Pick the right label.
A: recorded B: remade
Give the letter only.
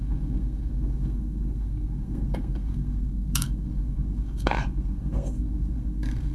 B